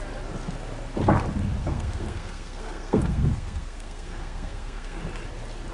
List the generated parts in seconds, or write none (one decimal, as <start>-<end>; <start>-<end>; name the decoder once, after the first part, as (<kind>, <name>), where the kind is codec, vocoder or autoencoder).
1.6-5.0 (codec, SNAC)